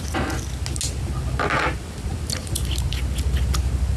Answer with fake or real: real